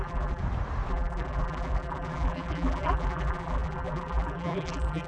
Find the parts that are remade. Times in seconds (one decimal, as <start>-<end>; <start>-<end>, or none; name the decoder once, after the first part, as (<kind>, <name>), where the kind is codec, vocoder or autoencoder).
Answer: 0.0-0.4 (vocoder, BigVGAN v2); 0.9-5.1